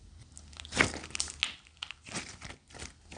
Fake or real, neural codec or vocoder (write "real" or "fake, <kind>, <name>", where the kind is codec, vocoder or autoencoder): real